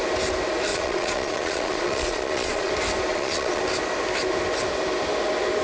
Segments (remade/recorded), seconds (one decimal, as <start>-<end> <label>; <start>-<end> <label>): 0.0-0.7 recorded; 0.7-2.7 remade; 2.7-3.1 recorded; 3.1-3.6 remade; 3.6-5.6 recorded